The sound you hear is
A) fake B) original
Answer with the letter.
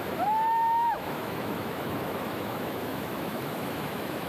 A